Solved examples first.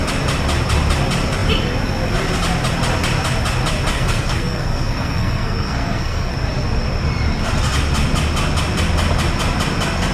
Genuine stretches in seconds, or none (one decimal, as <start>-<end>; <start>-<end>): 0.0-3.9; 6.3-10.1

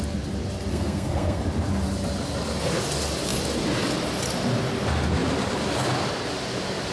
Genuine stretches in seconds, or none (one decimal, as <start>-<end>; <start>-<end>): 0.0-0.7; 1.4-6.9

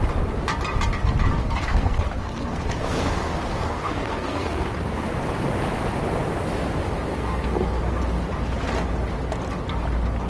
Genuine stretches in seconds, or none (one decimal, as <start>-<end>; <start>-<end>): 0.0-1.4; 4.7-7.1; 8.0-10.3